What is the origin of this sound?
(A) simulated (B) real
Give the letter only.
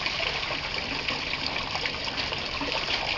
B